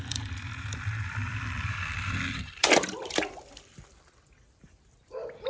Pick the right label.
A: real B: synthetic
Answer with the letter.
B